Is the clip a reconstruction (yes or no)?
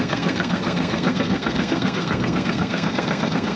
yes